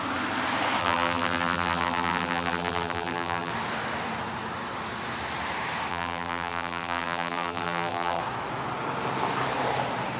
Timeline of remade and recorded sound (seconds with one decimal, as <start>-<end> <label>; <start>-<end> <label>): 0.0-0.8 recorded; 0.8-3.5 remade; 3.5-5.9 recorded; 5.9-8.2 remade; 8.2-10.2 recorded